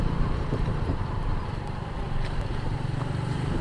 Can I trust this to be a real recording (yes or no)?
no